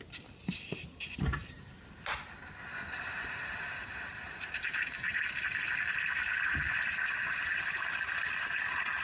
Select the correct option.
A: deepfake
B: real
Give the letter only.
B